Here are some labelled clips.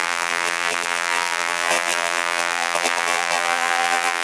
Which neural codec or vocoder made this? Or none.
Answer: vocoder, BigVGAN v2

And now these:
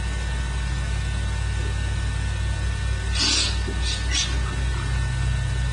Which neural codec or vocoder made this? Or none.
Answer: none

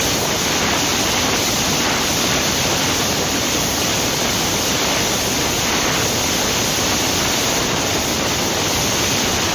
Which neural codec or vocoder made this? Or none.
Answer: vocoder, BigVGAN v2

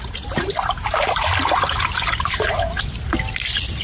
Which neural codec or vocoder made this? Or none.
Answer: vocoder, BigVGAN v2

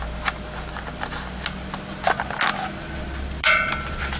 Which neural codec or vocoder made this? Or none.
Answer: none